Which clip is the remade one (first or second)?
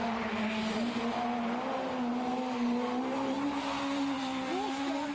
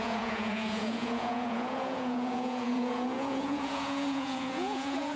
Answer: second